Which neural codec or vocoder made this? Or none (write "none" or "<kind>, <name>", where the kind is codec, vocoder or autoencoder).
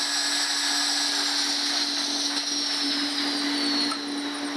none